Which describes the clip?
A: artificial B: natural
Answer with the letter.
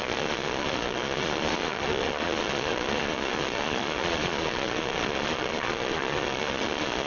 A